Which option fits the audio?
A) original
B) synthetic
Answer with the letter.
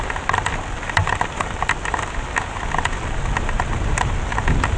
A